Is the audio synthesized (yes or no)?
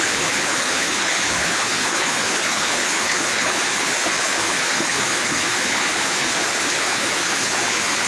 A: yes